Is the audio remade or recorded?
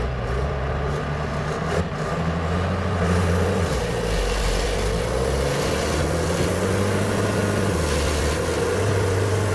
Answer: recorded